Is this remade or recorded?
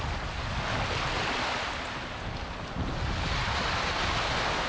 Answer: recorded